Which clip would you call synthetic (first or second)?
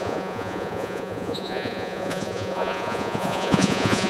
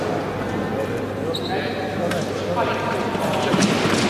first